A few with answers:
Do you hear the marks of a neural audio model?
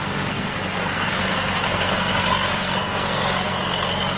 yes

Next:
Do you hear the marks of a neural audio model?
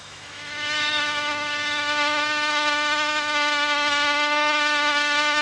yes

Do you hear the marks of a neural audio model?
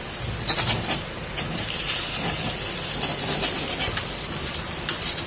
no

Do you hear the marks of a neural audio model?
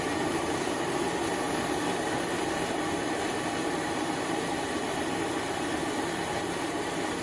yes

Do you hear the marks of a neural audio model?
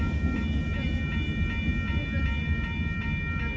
no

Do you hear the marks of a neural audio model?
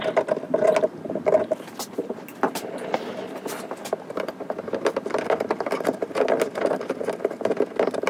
no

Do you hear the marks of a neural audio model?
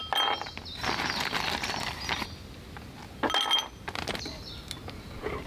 no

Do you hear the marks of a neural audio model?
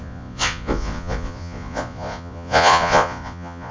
yes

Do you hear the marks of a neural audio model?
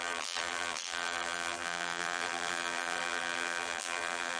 yes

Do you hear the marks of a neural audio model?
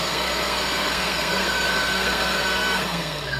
yes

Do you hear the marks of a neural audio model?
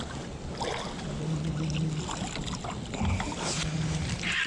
no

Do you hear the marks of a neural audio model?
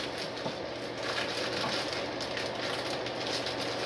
no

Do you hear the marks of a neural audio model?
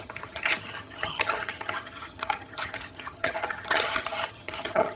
yes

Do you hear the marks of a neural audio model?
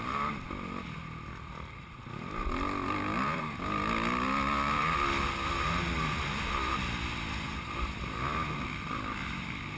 no